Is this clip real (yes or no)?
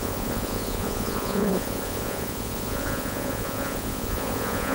no